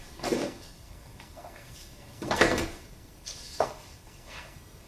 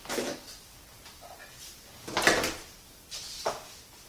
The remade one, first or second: first